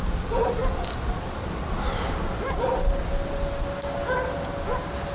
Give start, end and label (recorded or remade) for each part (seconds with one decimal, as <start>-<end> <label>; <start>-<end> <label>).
0.0-5.1 recorded